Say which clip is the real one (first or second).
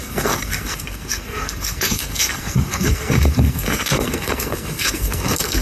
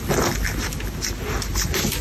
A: second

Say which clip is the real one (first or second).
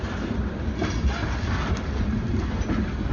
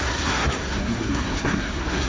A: first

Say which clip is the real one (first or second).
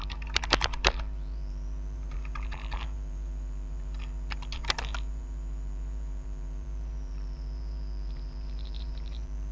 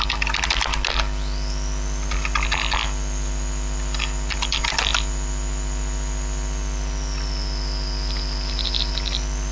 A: second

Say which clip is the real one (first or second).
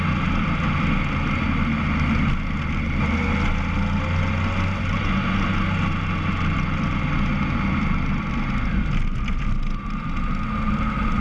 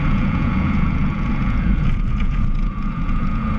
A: first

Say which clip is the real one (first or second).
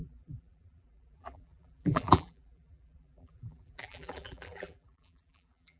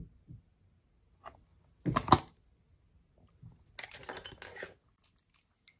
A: second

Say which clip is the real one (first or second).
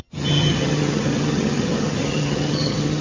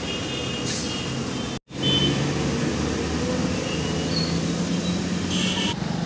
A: second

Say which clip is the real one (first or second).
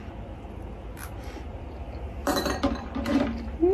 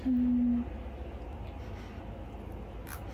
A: second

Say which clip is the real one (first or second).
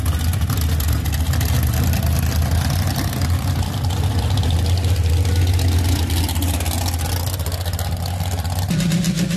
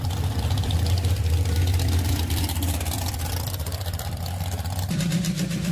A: first